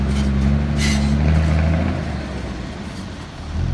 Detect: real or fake real